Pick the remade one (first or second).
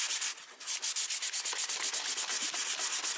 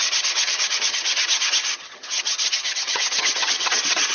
second